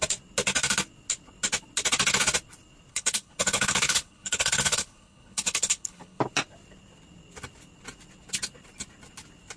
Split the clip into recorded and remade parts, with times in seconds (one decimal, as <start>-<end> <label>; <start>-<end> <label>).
0.0-2.9 recorded; 2.9-6.2 remade; 6.2-9.6 recorded